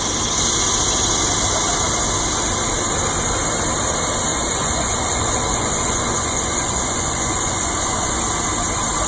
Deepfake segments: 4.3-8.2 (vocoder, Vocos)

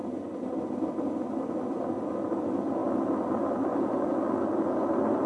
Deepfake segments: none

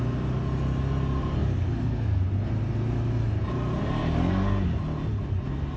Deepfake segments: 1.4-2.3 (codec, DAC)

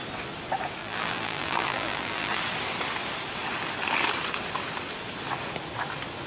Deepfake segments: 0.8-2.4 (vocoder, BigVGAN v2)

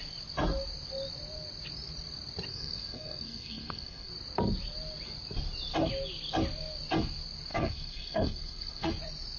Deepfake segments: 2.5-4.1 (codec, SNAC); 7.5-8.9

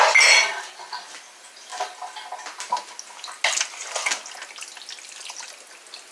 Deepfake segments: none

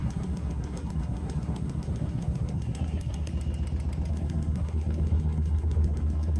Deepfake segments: 0.0-3.3 (codec, SNAC); 4.1-6.4

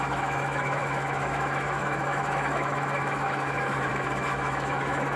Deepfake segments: 0.0-5.2 (autoencoder, DAC-VAE)